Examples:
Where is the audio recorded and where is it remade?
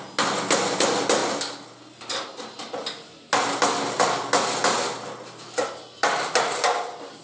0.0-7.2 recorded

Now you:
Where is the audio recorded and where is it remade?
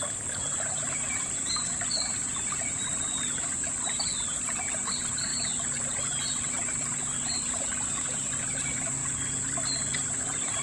0.0-5.3 remade; 5.3-6.7 recorded; 6.7-9.0 remade; 9.0-10.1 recorded; 10.1-10.6 remade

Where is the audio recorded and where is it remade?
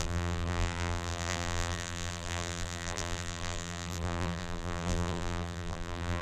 0.0-6.2 remade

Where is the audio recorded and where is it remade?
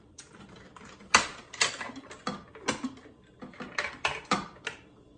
0.0-1.3 remade; 1.3-3.7 recorded; 3.7-5.2 remade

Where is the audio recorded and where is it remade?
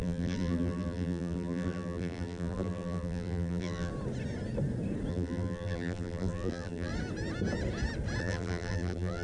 0.0-3.9 remade; 3.9-5.1 recorded; 5.1-6.9 remade; 6.9-8.2 recorded; 8.2-9.2 remade